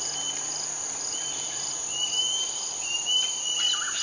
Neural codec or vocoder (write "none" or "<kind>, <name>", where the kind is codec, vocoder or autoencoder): none